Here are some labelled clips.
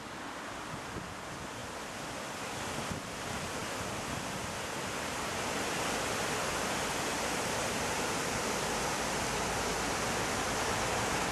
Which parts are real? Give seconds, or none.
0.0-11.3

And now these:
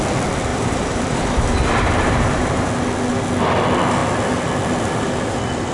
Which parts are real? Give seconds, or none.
0.0-0.5; 2.7-5.7

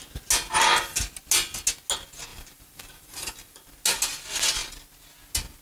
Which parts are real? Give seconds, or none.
0.0-2.3; 3.7-5.6